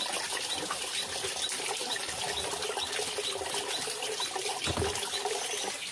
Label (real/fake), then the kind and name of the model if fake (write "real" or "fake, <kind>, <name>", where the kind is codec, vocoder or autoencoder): real